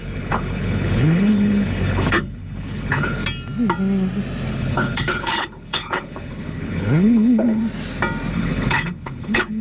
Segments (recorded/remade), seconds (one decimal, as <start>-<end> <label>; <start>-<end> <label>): 0.0-3.2 remade; 3.2-4.5 recorded; 4.5-7.6 remade; 7.6-8.3 recorded; 8.3-9.6 remade

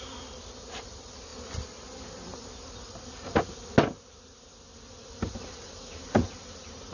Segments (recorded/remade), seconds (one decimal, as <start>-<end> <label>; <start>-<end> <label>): 0.0-6.9 recorded

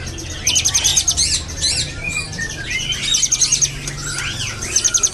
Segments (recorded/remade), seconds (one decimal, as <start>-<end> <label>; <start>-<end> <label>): 0.0-5.1 recorded

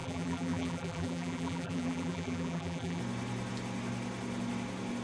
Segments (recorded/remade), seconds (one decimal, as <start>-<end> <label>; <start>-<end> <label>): 0.0-3.0 remade; 3.0-5.0 recorded

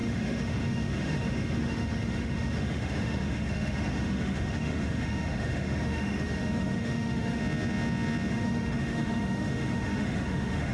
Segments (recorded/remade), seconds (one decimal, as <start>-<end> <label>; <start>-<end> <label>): 0.0-7.4 remade; 7.4-8.3 recorded; 8.3-10.7 remade

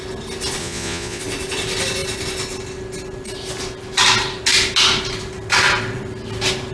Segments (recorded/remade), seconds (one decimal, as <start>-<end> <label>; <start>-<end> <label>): 0.0-0.6 recorded; 0.6-1.2 remade; 1.2-6.7 recorded